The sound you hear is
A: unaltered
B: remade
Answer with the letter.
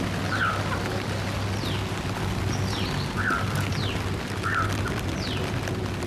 A